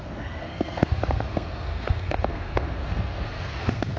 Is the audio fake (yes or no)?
yes